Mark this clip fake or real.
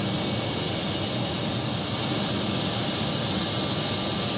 real